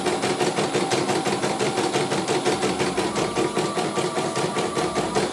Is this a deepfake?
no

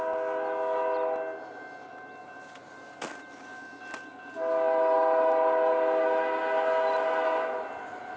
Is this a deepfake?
no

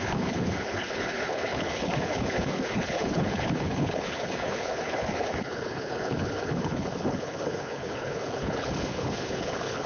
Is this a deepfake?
yes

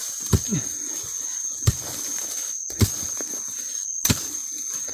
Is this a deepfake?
no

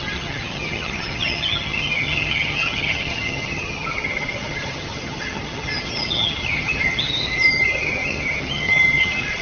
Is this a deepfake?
yes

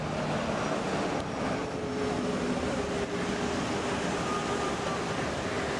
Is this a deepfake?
no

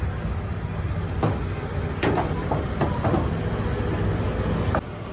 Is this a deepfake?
no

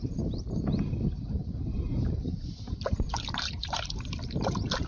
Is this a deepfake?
yes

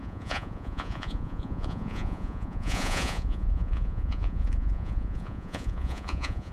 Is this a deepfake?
yes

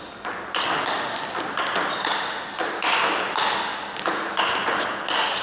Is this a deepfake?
no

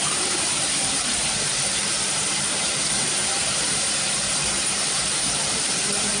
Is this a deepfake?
yes